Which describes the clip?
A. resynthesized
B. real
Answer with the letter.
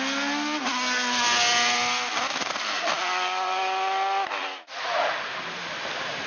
B